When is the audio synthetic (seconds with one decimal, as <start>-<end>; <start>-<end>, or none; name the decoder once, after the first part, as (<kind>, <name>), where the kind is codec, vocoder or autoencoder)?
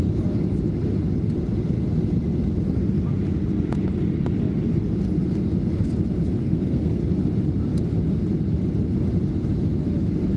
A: 6.4-7.0 (codec, SNAC)